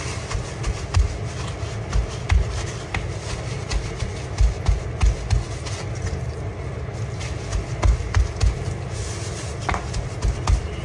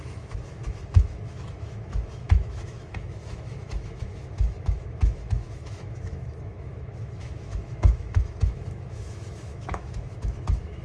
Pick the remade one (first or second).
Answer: second